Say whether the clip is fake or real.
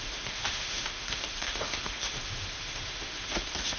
fake